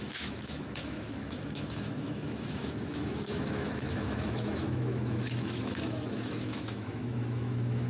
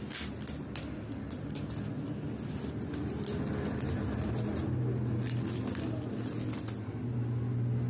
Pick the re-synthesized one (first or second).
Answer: first